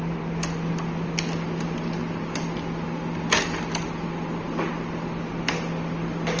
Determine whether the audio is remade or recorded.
recorded